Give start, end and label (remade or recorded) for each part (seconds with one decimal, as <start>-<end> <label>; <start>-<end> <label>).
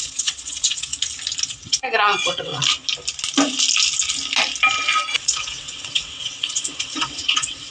0.0-0.9 remade; 0.9-1.5 recorded; 1.5-2.5 remade; 2.5-5.2 recorded; 5.2-7.7 remade